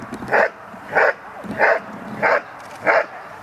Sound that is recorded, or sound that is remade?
recorded